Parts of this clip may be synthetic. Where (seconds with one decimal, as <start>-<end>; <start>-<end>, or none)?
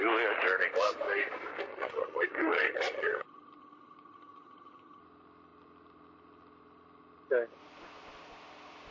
1.7-5.0